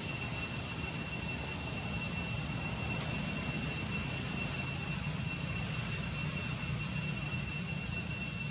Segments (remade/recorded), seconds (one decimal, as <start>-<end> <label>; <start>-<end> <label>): 0.0-8.5 recorded

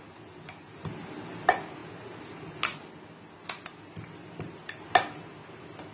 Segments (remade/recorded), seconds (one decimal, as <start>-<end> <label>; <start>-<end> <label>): 0.0-5.9 recorded

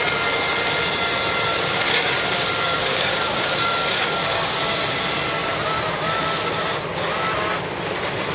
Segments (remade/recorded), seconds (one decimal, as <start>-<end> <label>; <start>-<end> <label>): 0.0-1.5 recorded; 1.5-4.6 remade; 4.6-8.3 recorded